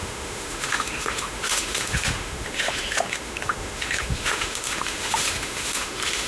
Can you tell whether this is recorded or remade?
remade